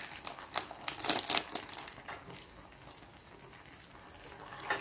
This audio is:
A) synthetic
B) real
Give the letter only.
B